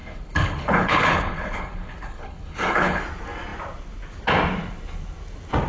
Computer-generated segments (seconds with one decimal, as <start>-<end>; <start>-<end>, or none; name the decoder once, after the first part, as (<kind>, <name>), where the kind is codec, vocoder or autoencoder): 0.0-3.0 (codec, HILCodec)